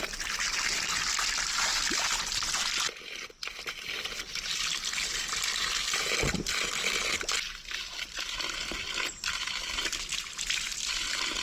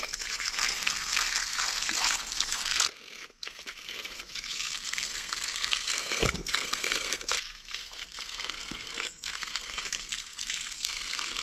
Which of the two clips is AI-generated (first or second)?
second